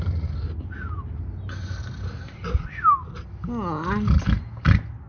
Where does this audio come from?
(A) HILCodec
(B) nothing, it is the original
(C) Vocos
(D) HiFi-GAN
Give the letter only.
B